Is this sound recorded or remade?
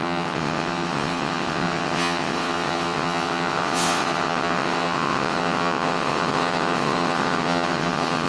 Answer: remade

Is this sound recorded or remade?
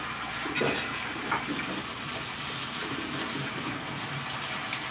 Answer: recorded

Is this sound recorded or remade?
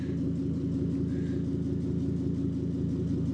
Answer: recorded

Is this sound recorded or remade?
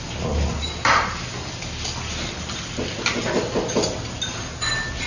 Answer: recorded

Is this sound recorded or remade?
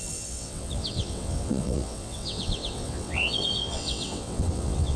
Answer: remade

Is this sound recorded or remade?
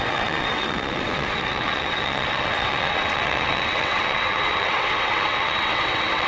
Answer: remade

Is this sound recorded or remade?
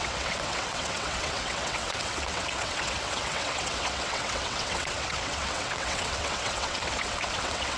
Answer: remade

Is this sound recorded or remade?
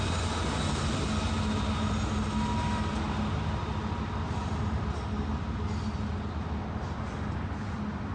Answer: recorded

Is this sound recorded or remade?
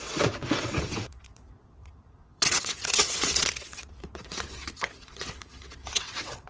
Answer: remade